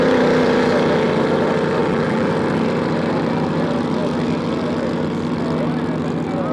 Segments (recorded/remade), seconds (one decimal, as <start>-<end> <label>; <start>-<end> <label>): 0.0-1.8 recorded; 1.8-2.3 remade; 2.3-6.5 recorded